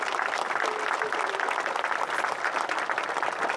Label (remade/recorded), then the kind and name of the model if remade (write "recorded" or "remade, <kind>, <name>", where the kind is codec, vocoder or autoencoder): recorded